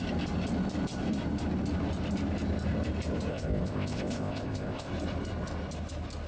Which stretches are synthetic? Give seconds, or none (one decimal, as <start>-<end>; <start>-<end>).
3.3-4.9